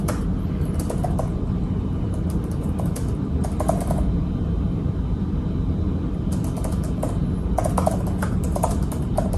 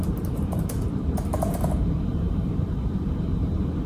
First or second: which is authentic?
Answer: first